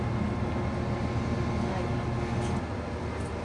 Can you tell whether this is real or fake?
real